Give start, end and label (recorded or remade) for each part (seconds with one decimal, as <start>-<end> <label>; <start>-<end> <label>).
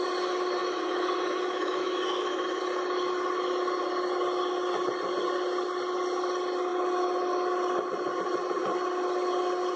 0.0-0.6 recorded; 0.6-2.6 remade; 2.6-9.8 recorded